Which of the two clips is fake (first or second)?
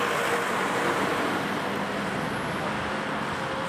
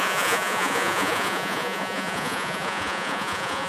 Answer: second